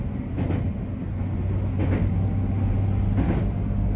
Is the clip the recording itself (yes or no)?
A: yes